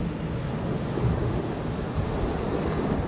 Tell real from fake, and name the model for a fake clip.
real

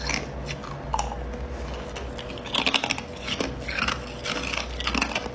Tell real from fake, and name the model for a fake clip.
real